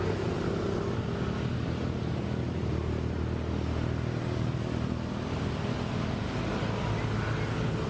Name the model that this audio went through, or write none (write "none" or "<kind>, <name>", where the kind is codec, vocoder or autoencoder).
none